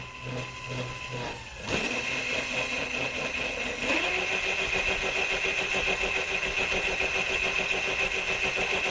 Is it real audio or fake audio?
real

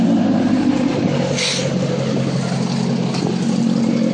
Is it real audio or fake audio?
real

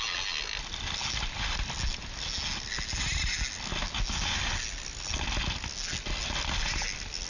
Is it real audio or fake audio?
real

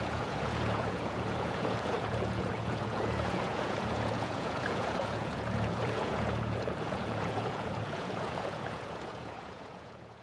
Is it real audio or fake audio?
fake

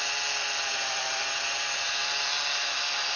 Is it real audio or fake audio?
real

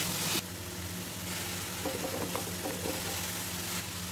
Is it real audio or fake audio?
real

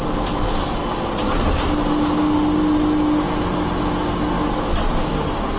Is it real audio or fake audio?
real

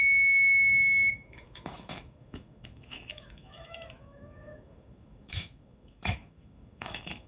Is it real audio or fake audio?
fake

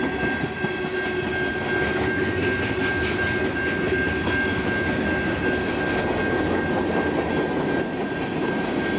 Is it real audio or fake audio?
real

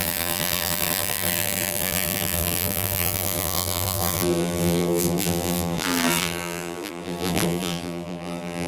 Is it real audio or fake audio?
fake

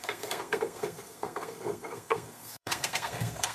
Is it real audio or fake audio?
fake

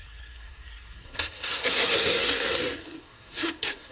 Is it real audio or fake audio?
fake